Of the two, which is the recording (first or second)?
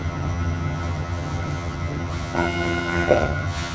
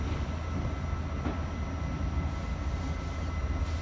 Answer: second